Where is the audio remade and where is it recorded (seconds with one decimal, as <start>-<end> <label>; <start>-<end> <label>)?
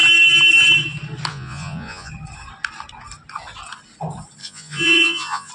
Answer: 0.0-1.3 recorded; 1.3-2.1 remade; 2.1-4.4 recorded; 4.4-5.5 remade